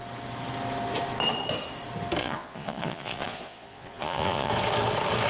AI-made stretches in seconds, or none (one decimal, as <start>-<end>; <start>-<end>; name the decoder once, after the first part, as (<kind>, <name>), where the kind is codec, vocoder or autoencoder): 2.2-4.5 (vocoder, Vocos)